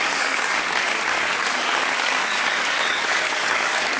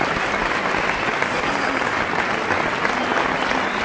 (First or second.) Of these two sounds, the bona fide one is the second